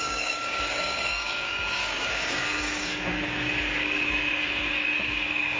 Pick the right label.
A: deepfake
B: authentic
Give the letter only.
A